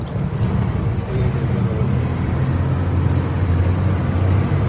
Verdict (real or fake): real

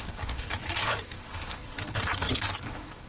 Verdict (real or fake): fake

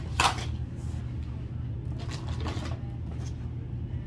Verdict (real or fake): real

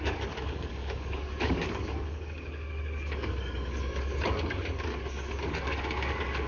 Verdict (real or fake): fake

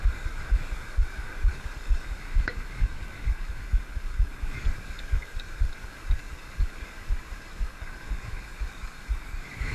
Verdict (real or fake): fake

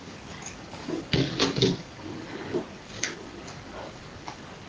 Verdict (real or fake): fake